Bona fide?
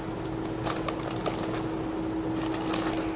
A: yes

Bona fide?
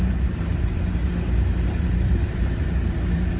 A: no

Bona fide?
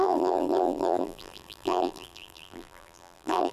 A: no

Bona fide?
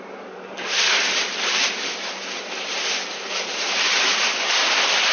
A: no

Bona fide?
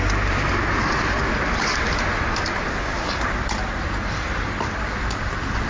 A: no